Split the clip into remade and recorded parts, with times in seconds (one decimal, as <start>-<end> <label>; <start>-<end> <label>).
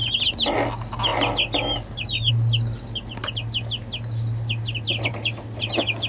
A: 0.0-6.1 recorded